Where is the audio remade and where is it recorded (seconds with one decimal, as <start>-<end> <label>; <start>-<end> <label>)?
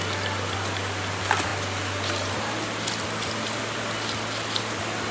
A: 0.0-5.1 recorded